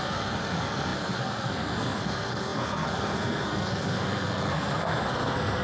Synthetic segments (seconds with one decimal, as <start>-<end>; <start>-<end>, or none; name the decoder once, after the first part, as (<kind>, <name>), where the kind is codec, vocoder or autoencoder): 0.0-5.6 (codec, SNAC)